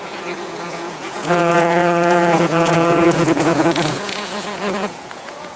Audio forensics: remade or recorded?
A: remade